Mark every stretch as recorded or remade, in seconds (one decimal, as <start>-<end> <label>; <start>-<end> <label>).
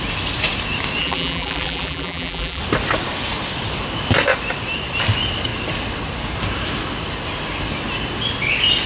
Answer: 0.0-1.0 recorded; 1.0-2.6 remade; 2.6-8.9 recorded